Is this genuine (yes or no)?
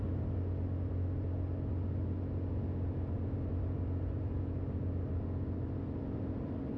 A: yes